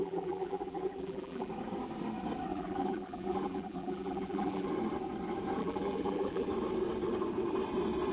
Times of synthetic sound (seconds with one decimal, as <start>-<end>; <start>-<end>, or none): 0.0-1.5; 2.5-4.7; 5.6-6.5